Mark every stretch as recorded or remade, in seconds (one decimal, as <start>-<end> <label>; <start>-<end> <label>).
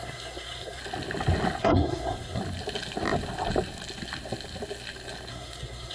0.0-0.8 remade; 0.8-1.6 recorded; 1.6-2.4 remade; 2.4-5.3 recorded; 5.3-5.9 remade